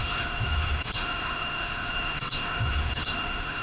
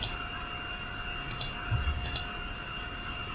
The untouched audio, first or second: second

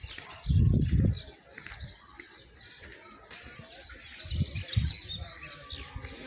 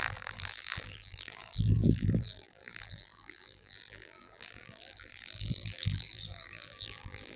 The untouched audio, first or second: first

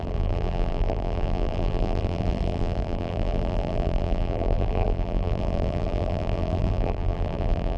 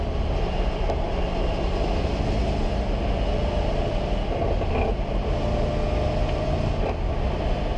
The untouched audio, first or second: second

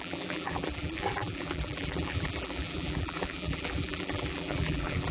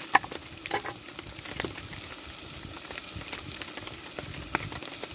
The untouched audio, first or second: second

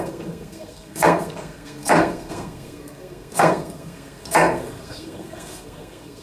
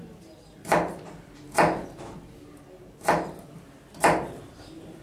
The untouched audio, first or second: second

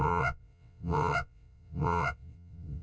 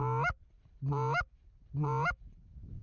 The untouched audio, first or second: second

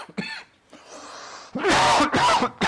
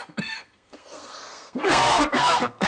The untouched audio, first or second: first